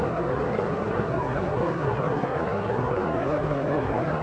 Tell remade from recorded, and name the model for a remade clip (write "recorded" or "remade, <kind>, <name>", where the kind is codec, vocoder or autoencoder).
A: remade, codec, SNAC